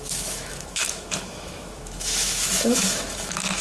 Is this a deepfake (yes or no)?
yes